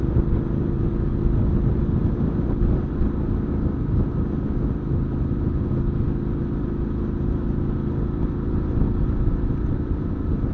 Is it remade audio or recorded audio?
recorded